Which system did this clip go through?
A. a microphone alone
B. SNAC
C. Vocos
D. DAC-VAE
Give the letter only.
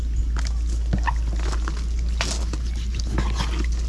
A